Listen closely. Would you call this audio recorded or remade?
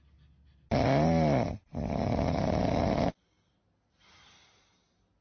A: recorded